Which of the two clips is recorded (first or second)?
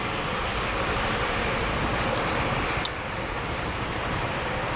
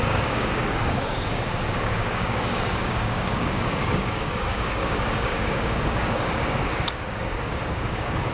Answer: first